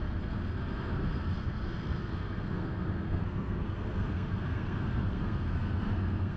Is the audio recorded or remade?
remade